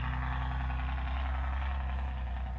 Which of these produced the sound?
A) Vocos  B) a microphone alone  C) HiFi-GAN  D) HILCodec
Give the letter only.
B